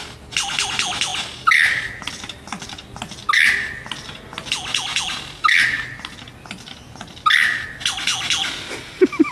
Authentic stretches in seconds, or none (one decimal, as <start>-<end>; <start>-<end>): 0.0-9.3